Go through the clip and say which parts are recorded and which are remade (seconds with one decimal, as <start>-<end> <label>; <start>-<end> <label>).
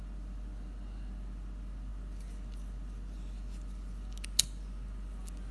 0.0-5.5 recorded